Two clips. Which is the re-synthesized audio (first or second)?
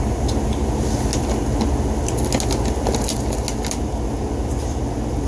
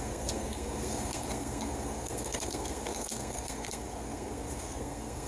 second